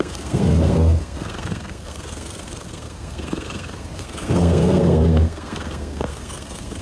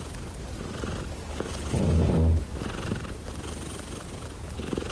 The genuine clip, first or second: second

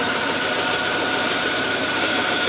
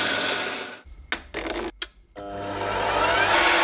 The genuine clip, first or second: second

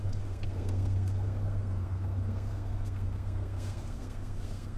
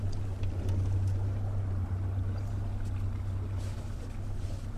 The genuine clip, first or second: second